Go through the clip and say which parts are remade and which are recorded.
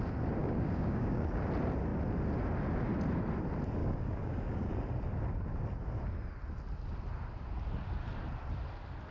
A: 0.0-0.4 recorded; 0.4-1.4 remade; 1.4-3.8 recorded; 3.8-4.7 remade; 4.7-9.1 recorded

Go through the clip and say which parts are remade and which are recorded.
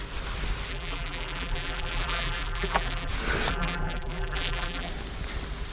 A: 0.0-0.7 recorded; 0.7-3.1 remade; 3.1-3.5 recorded; 3.5-4.9 remade; 4.9-5.7 recorded